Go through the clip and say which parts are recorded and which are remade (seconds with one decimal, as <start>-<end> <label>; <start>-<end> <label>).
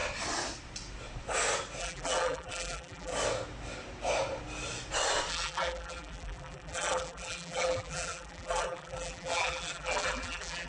0.0-1.8 recorded; 1.8-3.1 remade; 3.1-5.3 recorded; 5.3-10.7 remade